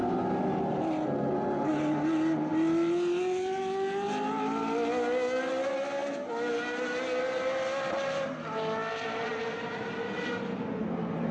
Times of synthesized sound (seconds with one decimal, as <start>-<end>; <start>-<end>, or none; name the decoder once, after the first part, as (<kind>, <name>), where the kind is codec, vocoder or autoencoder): none